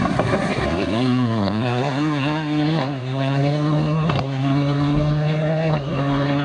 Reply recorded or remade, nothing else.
remade